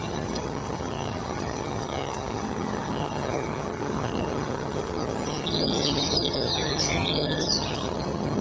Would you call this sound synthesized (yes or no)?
yes